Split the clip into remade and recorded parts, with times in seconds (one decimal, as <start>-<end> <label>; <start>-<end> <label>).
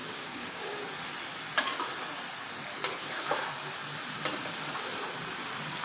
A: 0.0-0.8 remade; 0.8-5.8 recorded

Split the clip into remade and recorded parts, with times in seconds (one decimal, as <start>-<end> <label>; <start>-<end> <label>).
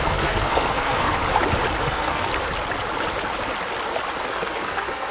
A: 0.0-1.2 remade; 1.2-1.8 recorded; 1.8-2.3 remade; 2.3-4.3 recorded; 4.3-5.1 remade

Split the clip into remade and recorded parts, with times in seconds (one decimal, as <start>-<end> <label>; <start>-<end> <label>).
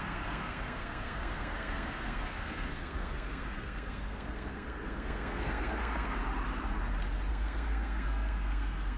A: 0.0-6.2 remade; 6.2-7.3 recorded; 7.3-9.0 remade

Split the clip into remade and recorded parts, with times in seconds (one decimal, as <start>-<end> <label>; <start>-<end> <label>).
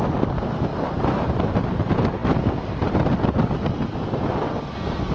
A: 0.0-5.1 recorded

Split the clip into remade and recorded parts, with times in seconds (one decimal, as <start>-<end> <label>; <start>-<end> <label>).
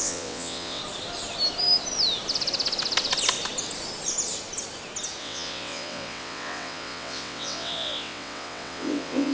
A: 0.0-0.8 remade; 0.8-5.2 recorded; 5.2-9.3 remade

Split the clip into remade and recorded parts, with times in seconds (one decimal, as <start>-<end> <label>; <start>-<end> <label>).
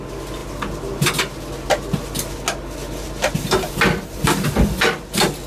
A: 0.0-5.5 recorded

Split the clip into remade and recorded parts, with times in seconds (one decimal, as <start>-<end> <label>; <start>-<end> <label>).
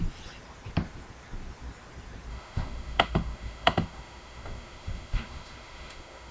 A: 0.0-2.3 recorded; 2.3-6.3 remade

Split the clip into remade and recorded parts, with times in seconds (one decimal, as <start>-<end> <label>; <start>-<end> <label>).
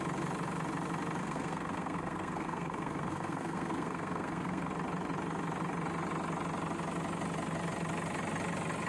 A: 0.0-1.2 recorded; 1.2-4.7 remade; 4.7-8.9 recorded